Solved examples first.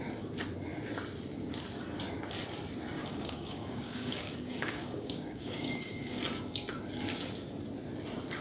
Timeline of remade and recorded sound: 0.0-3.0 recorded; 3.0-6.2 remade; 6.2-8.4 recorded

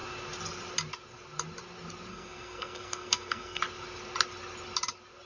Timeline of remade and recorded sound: 0.0-2.1 recorded; 2.1-3.6 remade; 3.6-5.3 recorded